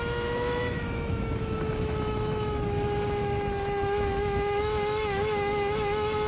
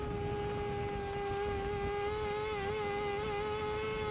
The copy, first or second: first